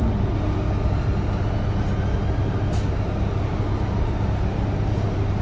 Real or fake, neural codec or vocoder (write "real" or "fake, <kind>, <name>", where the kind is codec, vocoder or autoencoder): real